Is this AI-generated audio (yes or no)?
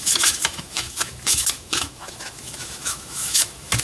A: yes